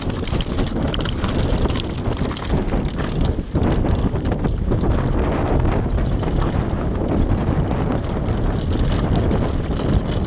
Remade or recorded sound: recorded